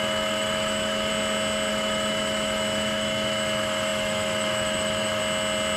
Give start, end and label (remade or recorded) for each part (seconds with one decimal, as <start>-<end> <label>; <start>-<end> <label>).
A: 0.0-1.1 remade; 1.1-1.7 recorded; 1.7-5.2 remade; 5.2-5.8 recorded